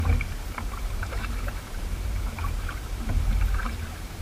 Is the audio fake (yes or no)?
yes